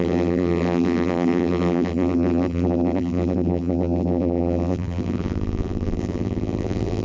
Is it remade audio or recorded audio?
remade